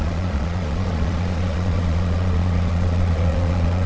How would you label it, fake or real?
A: fake